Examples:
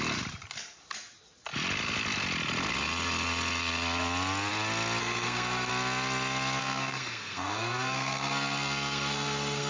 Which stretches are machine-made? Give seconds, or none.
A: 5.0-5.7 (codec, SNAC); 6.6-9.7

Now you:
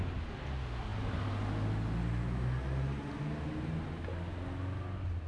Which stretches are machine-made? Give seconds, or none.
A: none

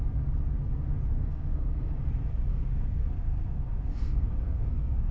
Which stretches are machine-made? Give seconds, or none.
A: 1.2-1.9 (codec, SNAC); 2.5-5.1

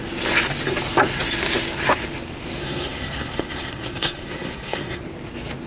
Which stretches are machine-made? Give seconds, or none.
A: 2.6-5.0 (codec, SNAC)

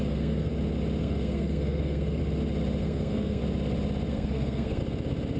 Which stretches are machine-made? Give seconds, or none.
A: 0.0-0.5 (codec, SNAC); 1.0-2.2; 2.8-3.4; 4.1-4.8